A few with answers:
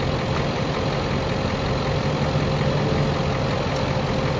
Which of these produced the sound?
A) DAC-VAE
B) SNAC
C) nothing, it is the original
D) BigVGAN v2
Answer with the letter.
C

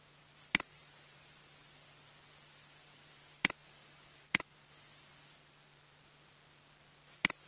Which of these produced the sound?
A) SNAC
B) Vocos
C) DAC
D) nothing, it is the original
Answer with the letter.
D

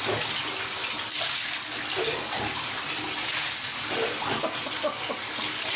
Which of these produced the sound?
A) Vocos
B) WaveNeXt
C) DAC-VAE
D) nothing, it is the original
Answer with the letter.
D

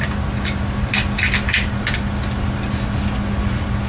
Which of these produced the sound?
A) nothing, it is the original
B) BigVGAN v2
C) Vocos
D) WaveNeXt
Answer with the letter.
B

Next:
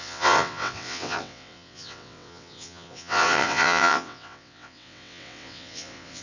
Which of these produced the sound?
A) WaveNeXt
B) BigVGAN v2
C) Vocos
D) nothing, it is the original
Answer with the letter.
A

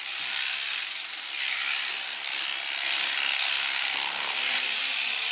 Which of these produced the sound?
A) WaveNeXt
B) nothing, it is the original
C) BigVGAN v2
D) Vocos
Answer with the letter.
B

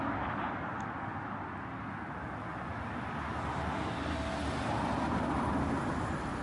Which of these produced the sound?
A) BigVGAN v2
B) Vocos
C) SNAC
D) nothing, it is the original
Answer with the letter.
D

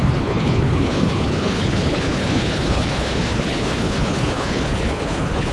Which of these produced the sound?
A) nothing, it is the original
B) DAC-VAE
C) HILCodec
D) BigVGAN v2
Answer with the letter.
C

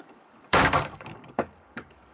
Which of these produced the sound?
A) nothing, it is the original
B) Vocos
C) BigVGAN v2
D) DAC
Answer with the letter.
D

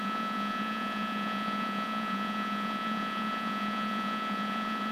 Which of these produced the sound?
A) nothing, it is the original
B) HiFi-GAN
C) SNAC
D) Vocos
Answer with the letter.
D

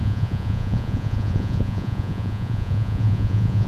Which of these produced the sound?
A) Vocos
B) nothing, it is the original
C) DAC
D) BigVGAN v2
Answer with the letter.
A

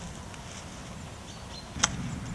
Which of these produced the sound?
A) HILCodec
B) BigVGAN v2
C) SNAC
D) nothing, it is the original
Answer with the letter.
D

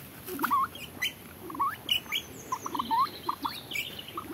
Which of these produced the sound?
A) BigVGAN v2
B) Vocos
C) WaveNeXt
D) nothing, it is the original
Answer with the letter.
D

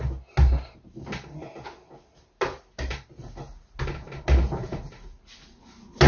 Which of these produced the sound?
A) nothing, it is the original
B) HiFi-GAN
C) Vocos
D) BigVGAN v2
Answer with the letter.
A